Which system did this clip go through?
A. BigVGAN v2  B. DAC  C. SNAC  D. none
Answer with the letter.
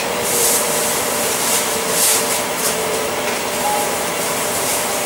A